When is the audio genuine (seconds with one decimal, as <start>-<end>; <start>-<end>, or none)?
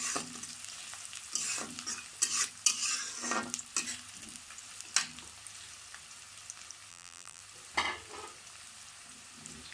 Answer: 0.0-6.9; 7.4-9.7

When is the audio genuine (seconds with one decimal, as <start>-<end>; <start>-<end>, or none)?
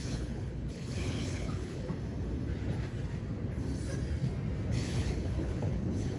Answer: 1.9-4.7